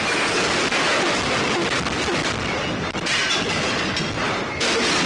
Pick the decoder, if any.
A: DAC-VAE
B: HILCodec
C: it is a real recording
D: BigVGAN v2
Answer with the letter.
C